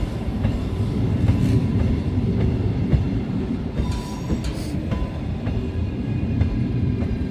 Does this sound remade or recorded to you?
remade